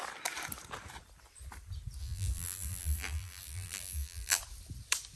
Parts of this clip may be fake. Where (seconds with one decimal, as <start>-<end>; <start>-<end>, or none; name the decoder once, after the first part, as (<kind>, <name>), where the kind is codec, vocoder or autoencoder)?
2.0-4.4 (vocoder, BigVGAN v2)